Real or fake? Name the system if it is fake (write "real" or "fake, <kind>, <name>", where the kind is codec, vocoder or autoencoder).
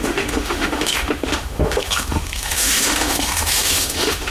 fake, autoencoder, DAC-VAE